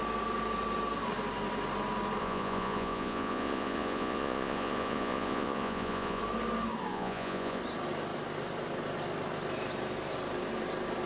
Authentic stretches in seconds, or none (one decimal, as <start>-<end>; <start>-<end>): 0.0-2.2; 6.2-6.9; 7.6-11.1